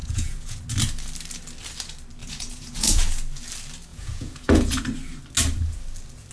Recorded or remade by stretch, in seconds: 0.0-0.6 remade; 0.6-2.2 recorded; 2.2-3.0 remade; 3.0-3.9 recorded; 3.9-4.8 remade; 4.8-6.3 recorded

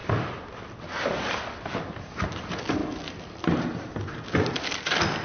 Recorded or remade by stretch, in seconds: 0.0-5.2 recorded

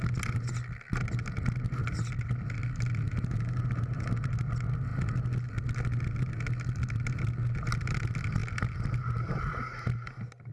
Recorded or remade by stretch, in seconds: 0.0-10.5 recorded

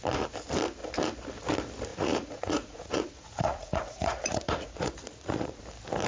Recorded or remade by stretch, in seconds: 0.0-1.9 recorded; 1.9-5.6 remade; 5.6-6.1 recorded

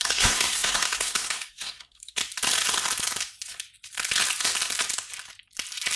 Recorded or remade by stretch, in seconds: 0.0-2.2 remade; 2.2-6.0 recorded

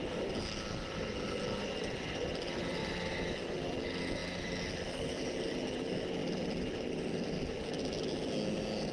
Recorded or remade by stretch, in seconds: 0.0-8.9 recorded

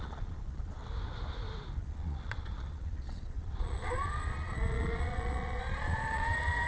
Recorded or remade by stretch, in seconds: 0.0-0.8 remade; 0.8-1.8 recorded; 1.8-6.7 remade

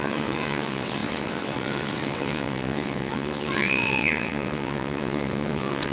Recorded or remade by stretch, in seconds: 0.0-5.9 remade